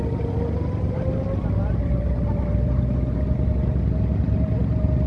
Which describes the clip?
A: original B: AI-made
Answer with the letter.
A